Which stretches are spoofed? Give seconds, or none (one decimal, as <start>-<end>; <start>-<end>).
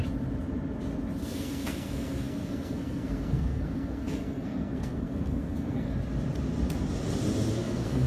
1.2-5.9; 7.6-8.1